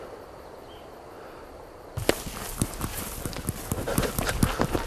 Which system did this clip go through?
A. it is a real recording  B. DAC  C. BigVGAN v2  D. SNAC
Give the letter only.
A